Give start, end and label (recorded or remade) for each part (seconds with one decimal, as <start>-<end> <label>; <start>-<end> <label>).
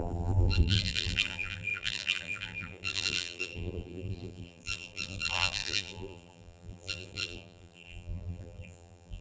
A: 0.0-9.2 remade